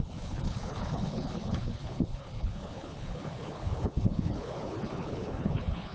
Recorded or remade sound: remade